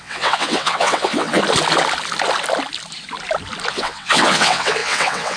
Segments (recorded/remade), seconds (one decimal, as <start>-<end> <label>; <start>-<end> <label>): 0.0-1.4 remade; 1.4-3.7 recorded; 3.7-5.4 remade